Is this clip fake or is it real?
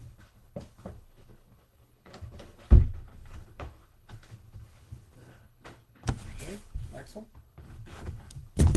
fake